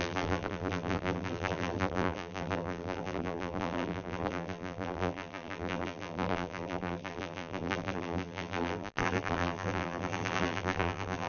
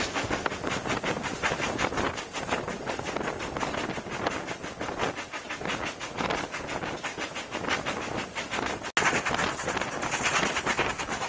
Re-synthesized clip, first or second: first